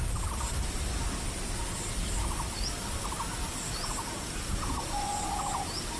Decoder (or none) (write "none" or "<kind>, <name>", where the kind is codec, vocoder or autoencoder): none